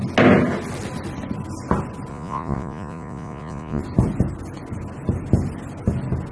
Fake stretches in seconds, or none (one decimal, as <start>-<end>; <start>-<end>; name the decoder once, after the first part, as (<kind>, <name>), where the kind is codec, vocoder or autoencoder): 2.1-3.8 (vocoder, Vocos)

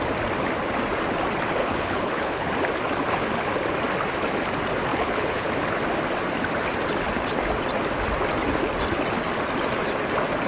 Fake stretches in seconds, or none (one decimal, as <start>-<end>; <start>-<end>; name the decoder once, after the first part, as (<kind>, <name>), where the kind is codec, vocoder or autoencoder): 1.6-2.5 (codec, HILCodec); 4.9-5.5